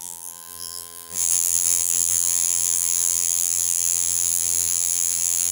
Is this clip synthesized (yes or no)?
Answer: yes